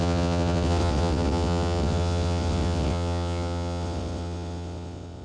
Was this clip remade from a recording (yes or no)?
yes